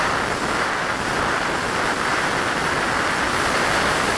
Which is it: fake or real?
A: real